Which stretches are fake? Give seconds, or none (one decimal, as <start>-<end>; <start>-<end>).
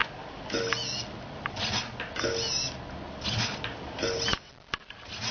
none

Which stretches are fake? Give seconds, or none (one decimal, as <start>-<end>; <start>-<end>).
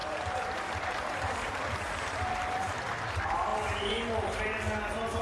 0.0-2.3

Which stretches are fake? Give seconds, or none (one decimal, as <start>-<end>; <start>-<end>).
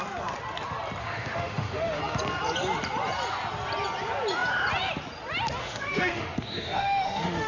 1.0-2.0; 5.6-7.5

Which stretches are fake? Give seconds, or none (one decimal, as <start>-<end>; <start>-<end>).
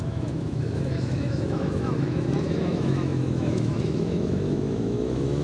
0.0-5.4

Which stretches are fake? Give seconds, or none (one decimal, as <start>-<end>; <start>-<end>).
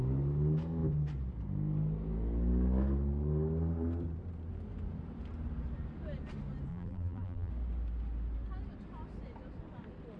6.7-7.5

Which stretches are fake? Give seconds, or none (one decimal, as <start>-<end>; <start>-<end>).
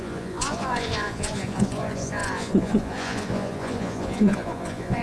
0.0-5.0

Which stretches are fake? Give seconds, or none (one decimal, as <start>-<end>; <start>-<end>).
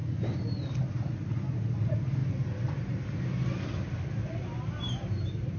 none